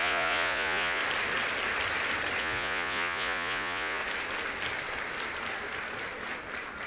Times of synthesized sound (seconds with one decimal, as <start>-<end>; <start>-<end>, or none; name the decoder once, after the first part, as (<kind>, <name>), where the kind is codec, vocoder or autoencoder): 0.0-1.0 (vocoder, Vocos); 2.4-4.0